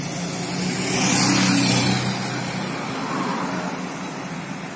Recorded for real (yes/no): yes